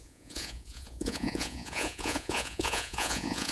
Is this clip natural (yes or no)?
no